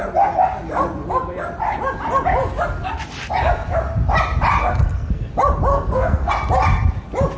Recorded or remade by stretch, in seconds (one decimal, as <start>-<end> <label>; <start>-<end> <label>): 0.0-4.6 recorded; 4.6-5.3 remade; 5.3-5.7 recorded; 5.7-6.3 remade; 6.3-7.4 recorded